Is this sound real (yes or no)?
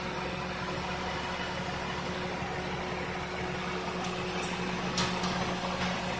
yes